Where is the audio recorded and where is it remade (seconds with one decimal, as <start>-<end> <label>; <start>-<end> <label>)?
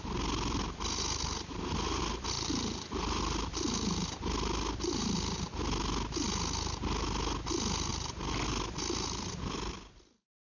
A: 0.0-10.5 recorded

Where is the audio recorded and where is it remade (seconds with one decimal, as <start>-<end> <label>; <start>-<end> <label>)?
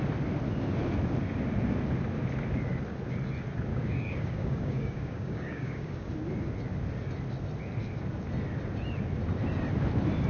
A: 0.0-3.7 recorded; 3.7-6.1 remade; 6.1-10.3 recorded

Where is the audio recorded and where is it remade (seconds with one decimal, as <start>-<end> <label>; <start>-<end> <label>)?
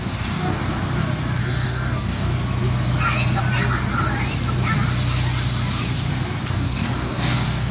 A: 0.0-0.6 remade; 0.6-1.4 recorded; 1.4-2.3 remade; 2.3-6.5 recorded; 6.5-7.7 remade